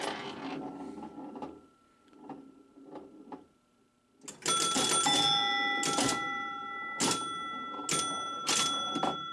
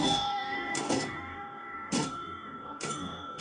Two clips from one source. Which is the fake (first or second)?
second